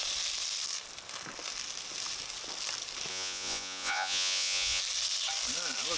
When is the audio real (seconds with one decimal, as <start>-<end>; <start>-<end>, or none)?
0.0-3.1; 4.8-6.0